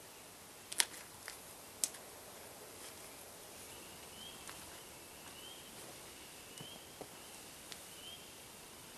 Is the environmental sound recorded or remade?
recorded